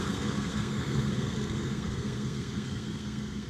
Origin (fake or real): fake